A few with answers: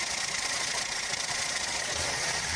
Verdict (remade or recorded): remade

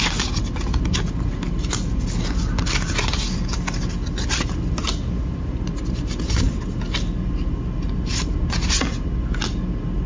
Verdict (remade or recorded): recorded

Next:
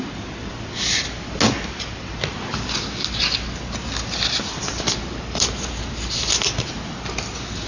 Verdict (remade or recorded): recorded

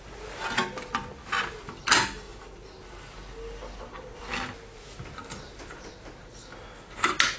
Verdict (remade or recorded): recorded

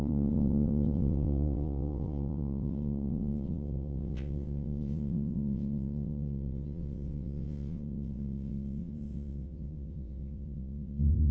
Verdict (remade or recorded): remade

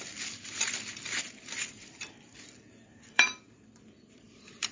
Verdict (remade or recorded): remade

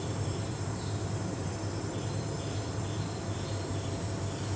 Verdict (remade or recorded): remade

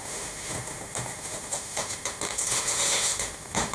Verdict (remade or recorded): remade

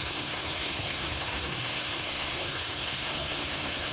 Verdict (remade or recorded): remade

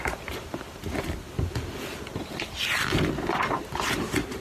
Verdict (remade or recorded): recorded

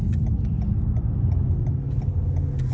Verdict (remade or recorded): recorded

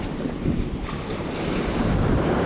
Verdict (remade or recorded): remade